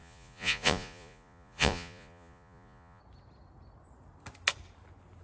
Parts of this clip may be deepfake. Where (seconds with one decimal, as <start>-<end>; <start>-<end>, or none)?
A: 0.0-3.0